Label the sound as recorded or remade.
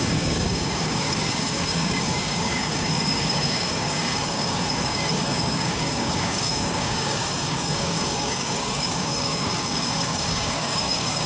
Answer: remade